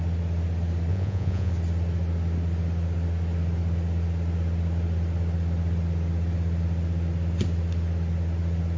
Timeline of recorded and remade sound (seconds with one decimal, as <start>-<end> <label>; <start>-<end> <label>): 0.0-0.9 recorded; 0.9-1.5 remade; 1.5-8.8 recorded